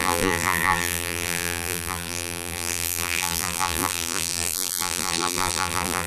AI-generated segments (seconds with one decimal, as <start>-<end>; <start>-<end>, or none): 0.0-6.1